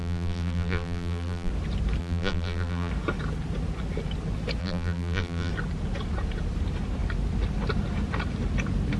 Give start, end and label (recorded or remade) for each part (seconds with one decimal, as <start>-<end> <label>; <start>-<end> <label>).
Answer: 0.0-1.5 remade; 1.5-2.0 recorded; 2.0-2.9 remade; 2.9-4.6 recorded; 4.6-5.5 remade; 5.5-9.0 recorded